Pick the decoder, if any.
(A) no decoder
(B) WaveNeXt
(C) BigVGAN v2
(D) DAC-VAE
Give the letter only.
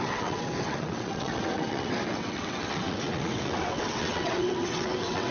B